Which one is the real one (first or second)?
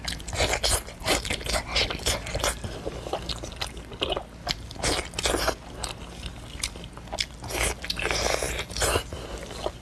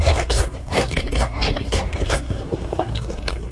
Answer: first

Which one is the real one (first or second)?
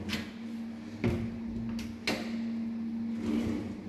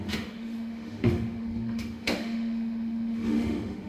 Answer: first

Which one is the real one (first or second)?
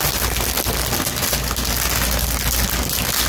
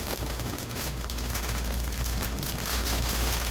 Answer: first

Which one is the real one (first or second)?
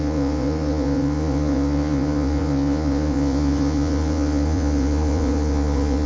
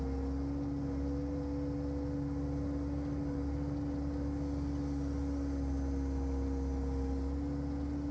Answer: second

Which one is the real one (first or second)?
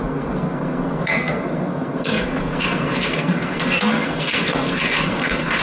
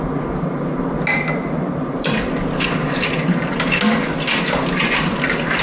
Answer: second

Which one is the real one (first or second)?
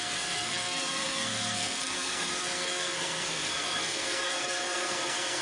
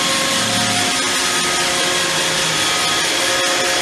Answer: second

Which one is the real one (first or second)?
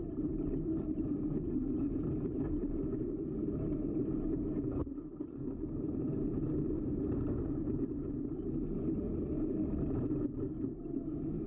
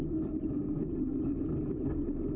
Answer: second